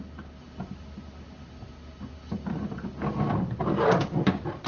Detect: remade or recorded recorded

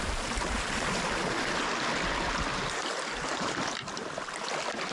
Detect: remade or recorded recorded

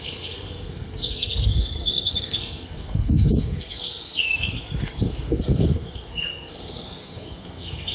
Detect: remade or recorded remade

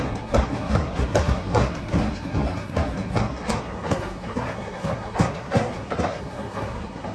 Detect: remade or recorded remade